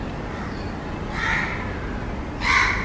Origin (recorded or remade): recorded